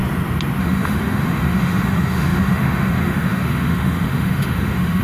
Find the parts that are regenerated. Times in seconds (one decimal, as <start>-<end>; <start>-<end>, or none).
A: 0.6-5.0